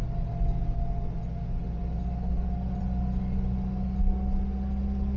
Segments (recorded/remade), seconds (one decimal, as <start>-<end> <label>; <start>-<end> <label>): 0.0-5.2 recorded

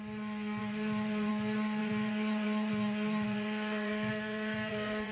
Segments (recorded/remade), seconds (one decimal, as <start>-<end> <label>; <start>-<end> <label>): 0.0-0.6 recorded; 0.6-1.3 remade; 1.3-1.8 recorded; 1.8-5.1 remade

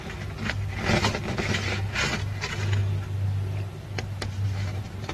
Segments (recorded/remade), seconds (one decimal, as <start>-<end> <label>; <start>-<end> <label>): 0.0-5.1 recorded